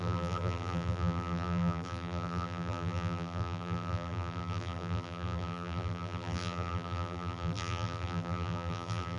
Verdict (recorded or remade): remade